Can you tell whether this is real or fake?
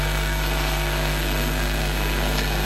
fake